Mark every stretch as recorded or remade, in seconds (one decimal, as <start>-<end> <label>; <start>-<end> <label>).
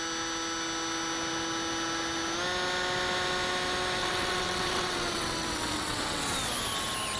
0.0-4.0 recorded; 4.0-6.2 remade; 6.2-7.2 recorded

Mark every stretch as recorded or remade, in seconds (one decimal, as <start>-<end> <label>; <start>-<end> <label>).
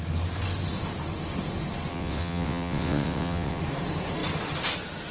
0.0-1.9 recorded; 1.9-3.6 remade; 3.6-5.1 recorded